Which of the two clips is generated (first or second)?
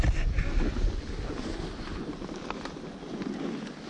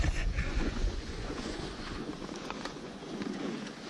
second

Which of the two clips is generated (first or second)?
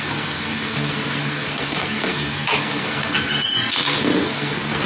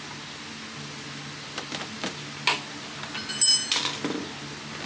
first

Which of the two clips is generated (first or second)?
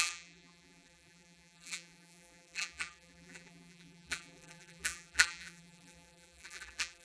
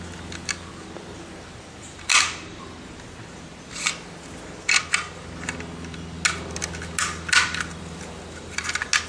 first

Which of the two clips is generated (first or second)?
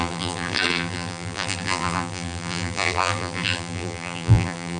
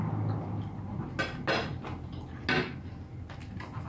first